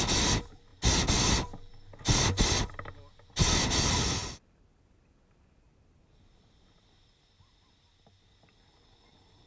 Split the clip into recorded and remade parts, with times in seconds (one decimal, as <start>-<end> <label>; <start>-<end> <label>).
0.0-4.2 recorded; 4.2-6.1 remade; 6.1-9.5 recorded